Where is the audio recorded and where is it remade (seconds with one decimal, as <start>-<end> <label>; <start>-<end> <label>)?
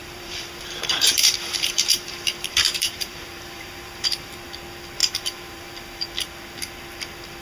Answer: 0.0-4.4 remade; 4.4-5.0 recorded; 5.0-6.1 remade; 6.1-7.4 recorded